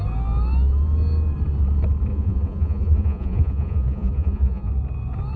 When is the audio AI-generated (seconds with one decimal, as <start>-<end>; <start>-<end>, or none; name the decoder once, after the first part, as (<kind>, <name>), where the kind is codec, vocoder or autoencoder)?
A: 2.1-4.7 (vocoder, Vocos)